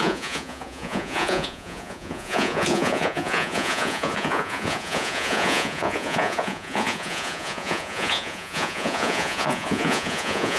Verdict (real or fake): fake